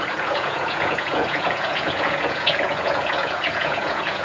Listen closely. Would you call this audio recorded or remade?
remade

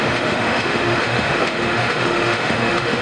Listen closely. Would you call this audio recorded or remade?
remade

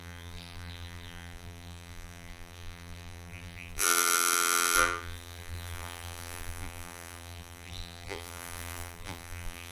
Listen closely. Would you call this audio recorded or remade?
remade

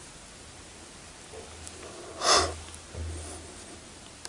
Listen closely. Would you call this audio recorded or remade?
recorded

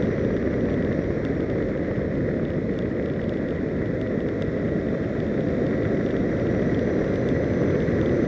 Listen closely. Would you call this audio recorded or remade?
recorded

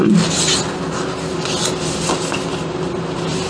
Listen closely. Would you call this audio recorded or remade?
recorded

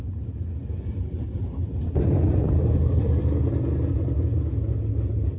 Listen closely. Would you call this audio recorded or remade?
recorded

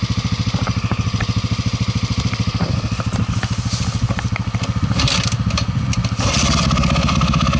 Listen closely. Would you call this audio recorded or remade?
recorded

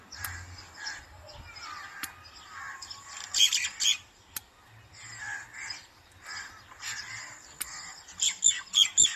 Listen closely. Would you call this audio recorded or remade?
recorded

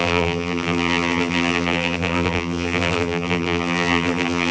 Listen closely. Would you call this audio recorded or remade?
remade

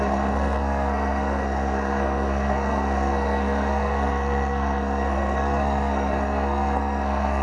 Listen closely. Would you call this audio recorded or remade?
remade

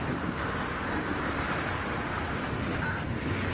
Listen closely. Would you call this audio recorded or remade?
remade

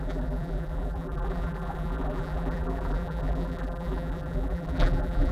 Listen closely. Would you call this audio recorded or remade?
remade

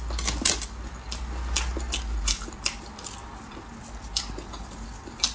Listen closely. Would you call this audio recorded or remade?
recorded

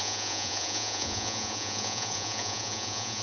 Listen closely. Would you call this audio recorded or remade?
remade